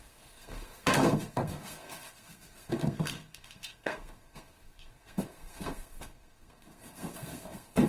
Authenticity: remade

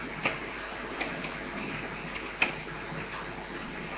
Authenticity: recorded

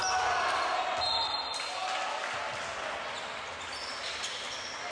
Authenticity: recorded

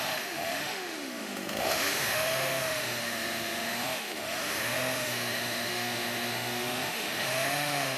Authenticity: remade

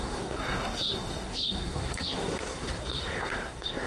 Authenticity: remade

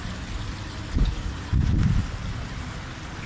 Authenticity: recorded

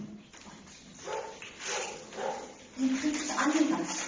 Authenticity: recorded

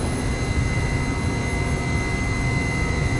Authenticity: recorded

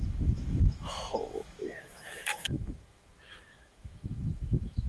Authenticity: remade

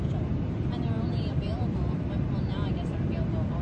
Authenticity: recorded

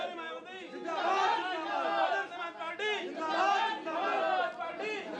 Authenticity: recorded